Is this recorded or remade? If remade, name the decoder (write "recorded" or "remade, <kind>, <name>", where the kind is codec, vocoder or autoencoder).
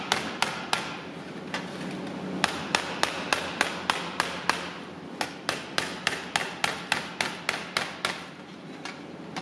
recorded